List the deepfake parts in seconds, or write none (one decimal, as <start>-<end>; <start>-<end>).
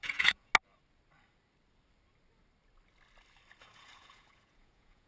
0.0-0.5; 3.6-5.1